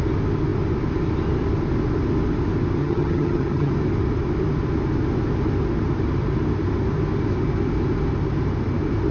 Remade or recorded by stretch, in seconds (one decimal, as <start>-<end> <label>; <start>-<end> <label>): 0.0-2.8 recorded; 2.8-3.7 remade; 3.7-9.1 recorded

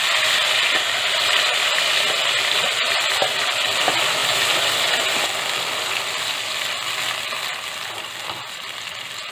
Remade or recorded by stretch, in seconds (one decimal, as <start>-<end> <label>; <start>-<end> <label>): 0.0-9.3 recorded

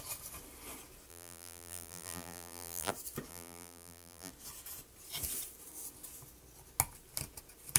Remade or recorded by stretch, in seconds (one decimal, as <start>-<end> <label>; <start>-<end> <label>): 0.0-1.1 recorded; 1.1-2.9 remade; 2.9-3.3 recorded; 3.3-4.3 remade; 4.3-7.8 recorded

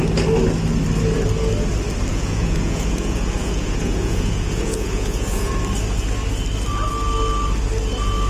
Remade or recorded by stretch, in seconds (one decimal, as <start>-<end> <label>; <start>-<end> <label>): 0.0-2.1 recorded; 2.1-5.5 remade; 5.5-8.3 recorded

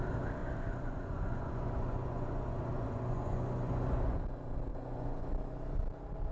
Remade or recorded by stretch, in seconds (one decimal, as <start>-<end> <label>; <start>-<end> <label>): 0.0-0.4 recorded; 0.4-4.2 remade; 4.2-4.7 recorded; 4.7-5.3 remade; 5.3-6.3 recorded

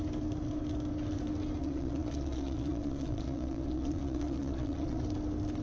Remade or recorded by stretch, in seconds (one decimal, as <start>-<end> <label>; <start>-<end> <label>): 0.0-1.6 recorded; 1.6-5.0 remade; 5.0-5.6 recorded

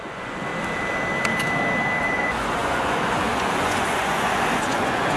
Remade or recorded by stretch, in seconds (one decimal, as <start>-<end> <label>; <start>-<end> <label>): 0.0-0.5 remade; 0.5-2.0 recorded; 2.0-5.2 remade